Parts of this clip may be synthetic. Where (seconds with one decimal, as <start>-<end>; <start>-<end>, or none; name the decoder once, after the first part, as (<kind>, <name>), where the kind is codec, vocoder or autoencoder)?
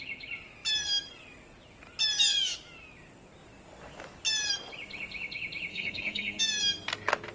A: 5.7-6.4 (codec, SNAC)